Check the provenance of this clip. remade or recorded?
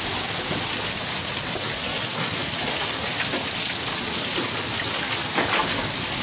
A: recorded